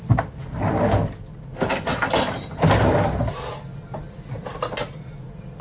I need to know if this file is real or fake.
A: real